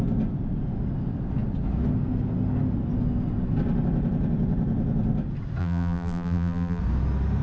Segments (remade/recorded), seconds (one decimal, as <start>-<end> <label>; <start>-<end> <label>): 0.0-5.6 recorded; 5.6-6.8 remade; 6.8-7.4 recorded